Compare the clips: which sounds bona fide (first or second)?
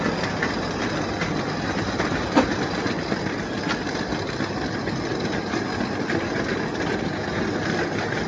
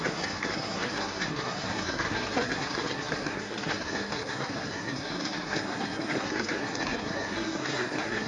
first